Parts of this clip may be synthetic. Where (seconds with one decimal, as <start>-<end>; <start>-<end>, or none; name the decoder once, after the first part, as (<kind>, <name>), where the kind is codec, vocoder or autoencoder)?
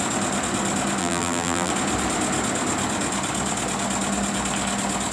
1.0-1.7 (vocoder, BigVGAN v2)